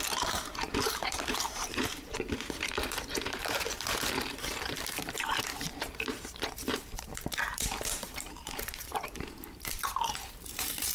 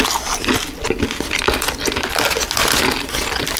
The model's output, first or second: first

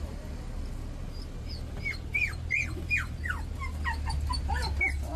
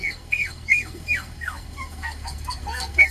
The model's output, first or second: second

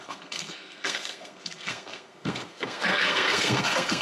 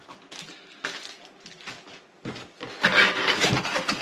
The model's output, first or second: first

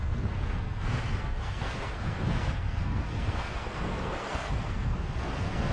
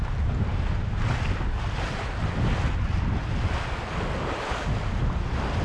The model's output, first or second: first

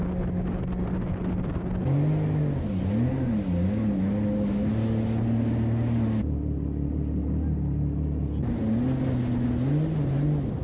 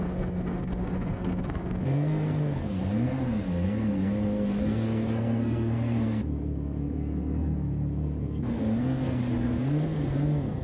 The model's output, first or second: second